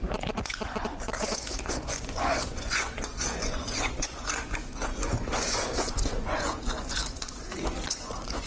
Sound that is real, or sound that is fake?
fake